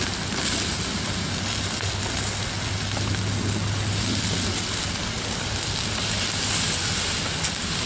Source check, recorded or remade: recorded